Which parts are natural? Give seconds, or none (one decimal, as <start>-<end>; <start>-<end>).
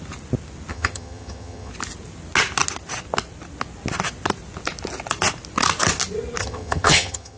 0.0-0.7; 1.7-6.4